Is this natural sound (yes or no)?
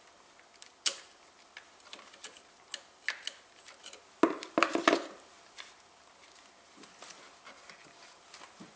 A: yes